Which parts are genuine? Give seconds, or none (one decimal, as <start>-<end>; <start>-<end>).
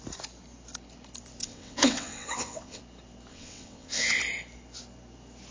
0.0-1.4; 2.8-3.3; 4.2-5.5